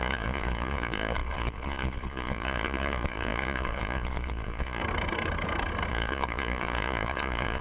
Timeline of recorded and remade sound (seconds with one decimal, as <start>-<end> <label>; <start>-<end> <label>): 0.0-4.8 remade; 4.8-5.9 recorded; 5.9-7.6 remade